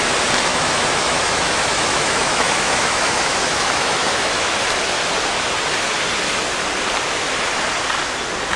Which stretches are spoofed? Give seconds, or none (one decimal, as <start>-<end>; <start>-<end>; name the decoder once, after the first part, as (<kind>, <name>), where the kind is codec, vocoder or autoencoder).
0.5-4.5 (autoencoder, DAC-VAE)